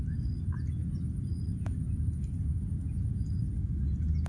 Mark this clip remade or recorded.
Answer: recorded